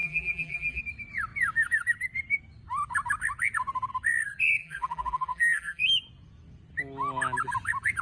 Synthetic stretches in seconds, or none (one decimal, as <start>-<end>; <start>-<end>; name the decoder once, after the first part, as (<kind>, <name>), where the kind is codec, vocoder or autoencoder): 0.0-0.8 (vocoder, BigVGAN v2); 4.6-5.8